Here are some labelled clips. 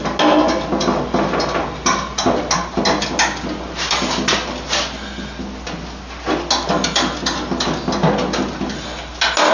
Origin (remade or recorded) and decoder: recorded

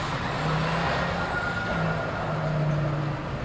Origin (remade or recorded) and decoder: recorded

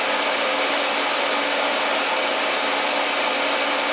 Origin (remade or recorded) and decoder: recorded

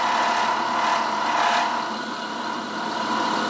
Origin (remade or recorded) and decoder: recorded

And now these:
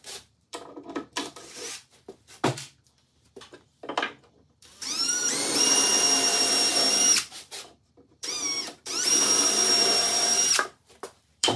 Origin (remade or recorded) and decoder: remade, vocoder, BigVGAN v2